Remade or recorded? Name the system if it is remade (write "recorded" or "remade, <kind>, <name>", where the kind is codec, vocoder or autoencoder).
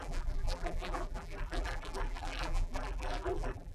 remade, vocoder, BigVGAN v2